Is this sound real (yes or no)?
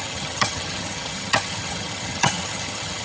no